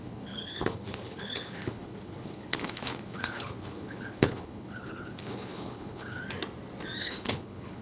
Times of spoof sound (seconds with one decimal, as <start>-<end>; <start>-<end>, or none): 0.0-6.2; 7.0-7.8